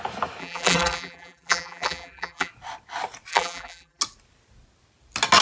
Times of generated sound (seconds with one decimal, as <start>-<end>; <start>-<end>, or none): 0.4-2.5; 3.3-4.0